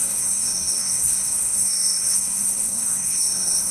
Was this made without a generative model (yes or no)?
no